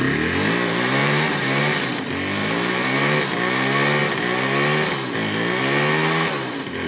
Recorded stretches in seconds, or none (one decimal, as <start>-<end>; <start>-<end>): 0.0-1.0; 1.6-2.4; 3.2-6.9